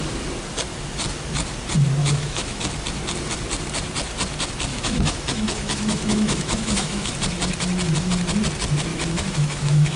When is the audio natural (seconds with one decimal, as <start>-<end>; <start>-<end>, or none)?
0.0-2.0; 2.6-4.7; 7.1-8.9